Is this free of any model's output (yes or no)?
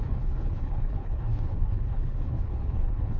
no